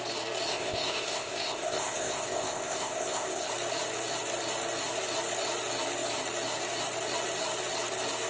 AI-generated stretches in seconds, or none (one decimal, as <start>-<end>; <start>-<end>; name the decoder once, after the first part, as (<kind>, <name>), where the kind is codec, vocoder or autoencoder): 0.5-3.5 (codec, ZipCodec)